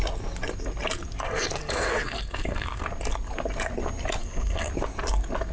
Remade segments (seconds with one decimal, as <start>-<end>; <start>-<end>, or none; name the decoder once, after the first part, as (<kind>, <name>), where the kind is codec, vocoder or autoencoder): 1.6-2.8 (codec, SNAC); 4.2-4.7